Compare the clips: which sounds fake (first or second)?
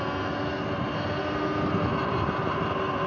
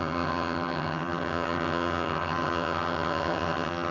second